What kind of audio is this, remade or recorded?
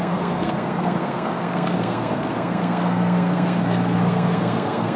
remade